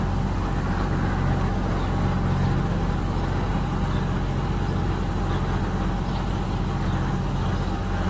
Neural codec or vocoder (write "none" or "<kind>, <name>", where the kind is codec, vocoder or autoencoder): none